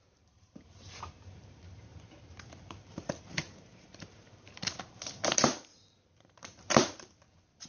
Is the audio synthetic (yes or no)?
yes